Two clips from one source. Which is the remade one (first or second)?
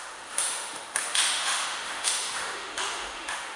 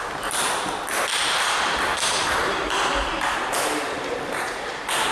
first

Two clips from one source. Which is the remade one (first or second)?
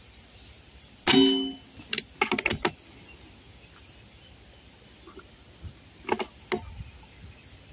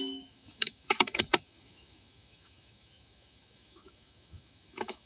second